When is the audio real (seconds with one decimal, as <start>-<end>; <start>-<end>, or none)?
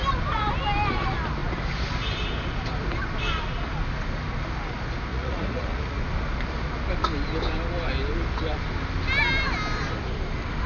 0.0-5.1; 6.0-10.7